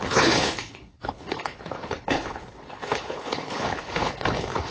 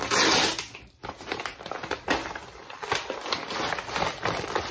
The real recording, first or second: second